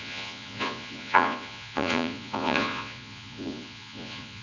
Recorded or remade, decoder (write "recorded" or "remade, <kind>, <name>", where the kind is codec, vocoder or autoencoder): remade, vocoder, Vocos